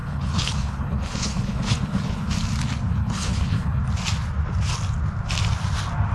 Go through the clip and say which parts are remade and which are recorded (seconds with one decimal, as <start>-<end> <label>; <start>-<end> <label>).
0.0-2.3 remade; 2.3-2.9 recorded; 2.9-3.8 remade; 3.8-6.1 recorded